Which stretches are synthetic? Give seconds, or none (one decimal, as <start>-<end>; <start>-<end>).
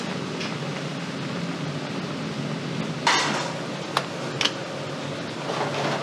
none